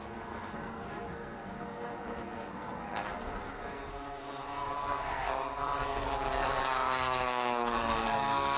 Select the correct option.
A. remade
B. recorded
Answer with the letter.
A